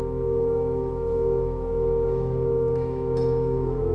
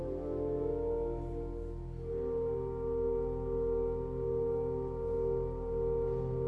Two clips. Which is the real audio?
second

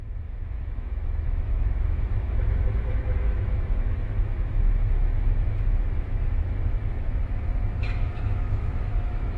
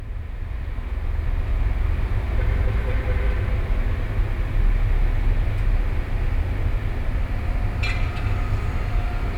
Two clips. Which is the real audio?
second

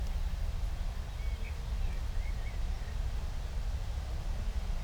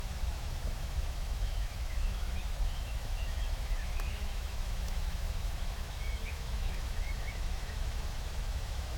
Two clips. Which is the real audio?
first